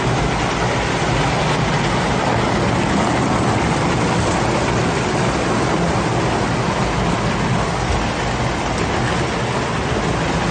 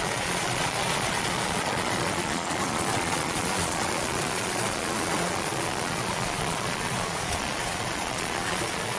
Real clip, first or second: first